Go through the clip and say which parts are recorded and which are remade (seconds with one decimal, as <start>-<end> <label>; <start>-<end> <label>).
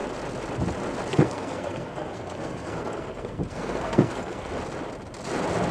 0.0-1.1 recorded; 1.1-4.5 remade; 4.5-5.7 recorded